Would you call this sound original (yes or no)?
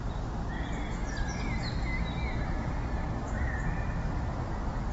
yes